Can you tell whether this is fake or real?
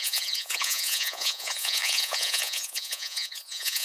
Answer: fake